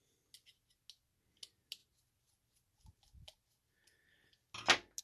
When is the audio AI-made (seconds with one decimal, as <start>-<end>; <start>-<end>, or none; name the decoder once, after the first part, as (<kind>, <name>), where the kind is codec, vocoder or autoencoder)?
none